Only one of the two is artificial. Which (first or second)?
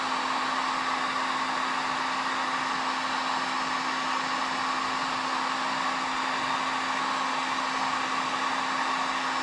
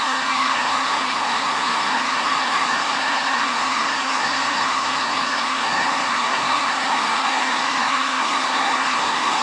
second